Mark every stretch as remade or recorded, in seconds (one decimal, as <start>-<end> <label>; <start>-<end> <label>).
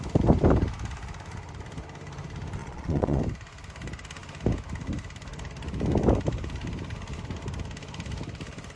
0.0-2.6 recorded; 2.6-3.2 remade; 3.2-8.8 recorded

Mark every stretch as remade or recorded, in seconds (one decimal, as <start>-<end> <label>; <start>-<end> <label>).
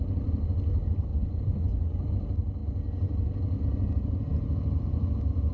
0.0-1.1 recorded; 1.1-2.1 remade; 2.1-5.5 recorded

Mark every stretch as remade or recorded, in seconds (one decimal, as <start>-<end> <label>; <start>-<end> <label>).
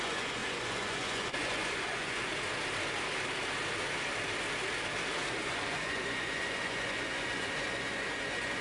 0.0-2.3 remade; 2.3-5.3 recorded; 5.3-8.6 remade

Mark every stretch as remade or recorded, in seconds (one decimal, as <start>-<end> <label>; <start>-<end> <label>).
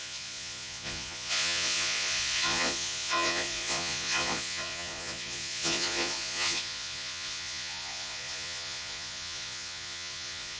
0.0-10.6 remade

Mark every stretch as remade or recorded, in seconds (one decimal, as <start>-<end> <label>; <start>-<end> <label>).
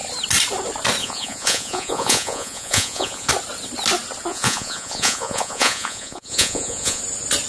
0.0-1.0 recorded; 1.0-3.3 remade; 3.3-4.3 recorded; 4.3-7.0 remade; 7.0-7.5 recorded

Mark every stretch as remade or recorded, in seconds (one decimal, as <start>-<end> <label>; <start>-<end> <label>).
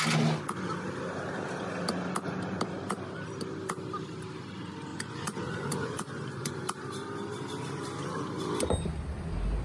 0.0-4.9 recorded; 4.9-6.5 remade; 6.5-9.6 recorded